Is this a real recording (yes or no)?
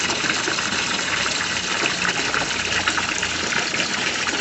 yes